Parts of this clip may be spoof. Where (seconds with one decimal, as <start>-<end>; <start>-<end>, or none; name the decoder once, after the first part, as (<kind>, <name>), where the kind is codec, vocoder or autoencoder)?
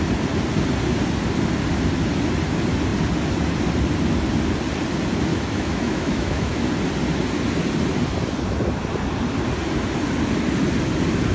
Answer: 5.3-6.7 (autoencoder, DAC-VAE)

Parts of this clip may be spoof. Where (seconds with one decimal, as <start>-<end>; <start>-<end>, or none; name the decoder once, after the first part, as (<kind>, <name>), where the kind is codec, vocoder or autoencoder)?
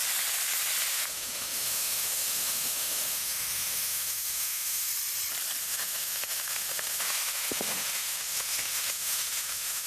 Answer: 0.9-4.9 (autoencoder, DAC-VAE); 5.6-9.9